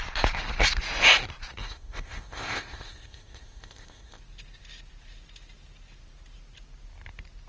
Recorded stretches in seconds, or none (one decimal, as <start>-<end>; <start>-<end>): 0.0-1.6; 4.2-7.5

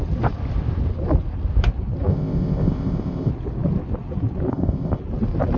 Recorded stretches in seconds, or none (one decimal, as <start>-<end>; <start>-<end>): 0.0-2.1; 3.3-4.5; 5.0-5.6